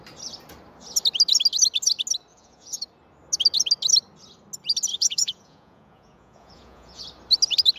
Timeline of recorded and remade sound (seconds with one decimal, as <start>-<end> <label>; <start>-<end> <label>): 0.0-2.3 recorded; 2.3-2.8 remade; 2.8-4.9 recorded; 4.9-7.0 remade; 7.0-7.8 recorded